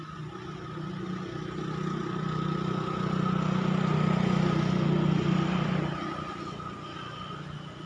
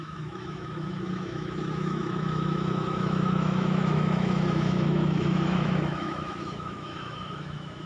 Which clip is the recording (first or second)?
first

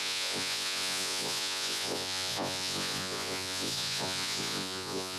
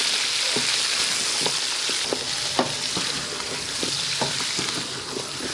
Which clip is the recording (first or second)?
second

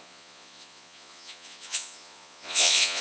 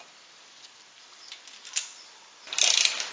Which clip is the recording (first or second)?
second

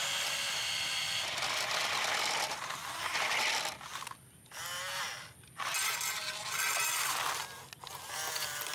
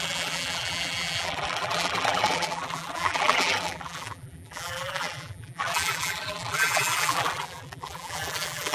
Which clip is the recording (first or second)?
first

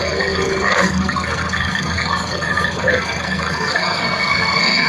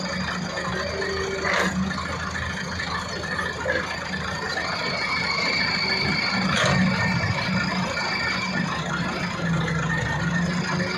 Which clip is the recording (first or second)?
second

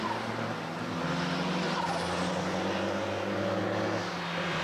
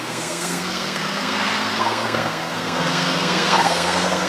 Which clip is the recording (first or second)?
first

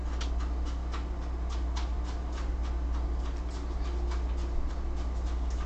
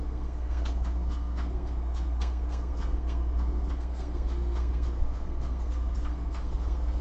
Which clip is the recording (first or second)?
first